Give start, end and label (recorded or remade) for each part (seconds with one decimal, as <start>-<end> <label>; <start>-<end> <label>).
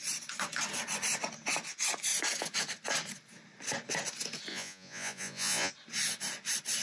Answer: 0.0-4.5 recorded; 4.5-5.7 remade; 5.7-6.8 recorded